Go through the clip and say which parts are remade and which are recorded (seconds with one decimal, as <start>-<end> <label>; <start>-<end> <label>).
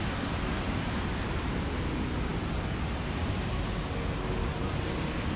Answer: 0.0-5.4 recorded